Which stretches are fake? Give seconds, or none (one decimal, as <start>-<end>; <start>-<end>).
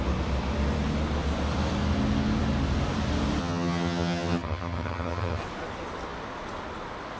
3.4-5.4